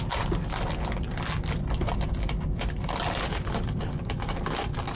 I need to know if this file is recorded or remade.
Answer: recorded